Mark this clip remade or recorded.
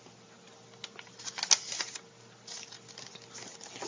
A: recorded